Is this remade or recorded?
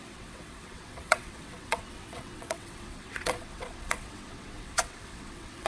remade